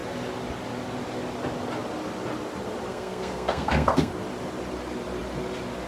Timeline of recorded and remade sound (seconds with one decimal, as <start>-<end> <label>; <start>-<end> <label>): 0.0-2.9 recorded; 2.9-4.1 remade; 4.1-5.9 recorded